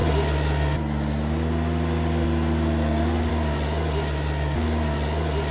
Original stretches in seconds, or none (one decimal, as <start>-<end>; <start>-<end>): 0.0-5.5